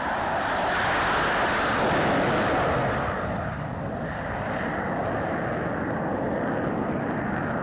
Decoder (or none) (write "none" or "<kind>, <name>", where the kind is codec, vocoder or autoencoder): none